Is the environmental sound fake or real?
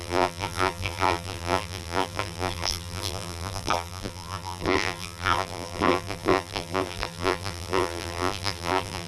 fake